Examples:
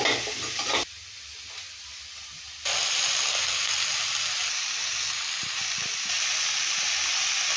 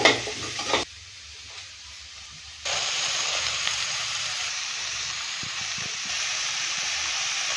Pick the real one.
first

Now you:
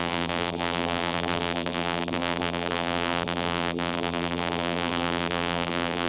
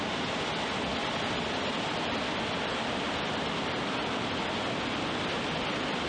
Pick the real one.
second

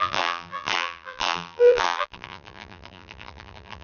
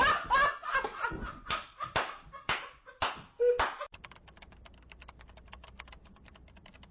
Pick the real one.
second